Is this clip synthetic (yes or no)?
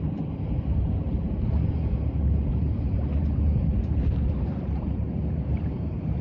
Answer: yes